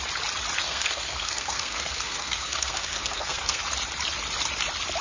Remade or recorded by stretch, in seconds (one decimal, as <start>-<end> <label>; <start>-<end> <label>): 0.0-0.6 recorded; 0.6-3.6 remade; 3.6-5.0 recorded